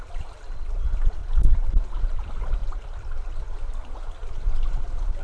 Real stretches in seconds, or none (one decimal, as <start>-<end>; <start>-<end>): 1.2-1.8; 2.6-4.3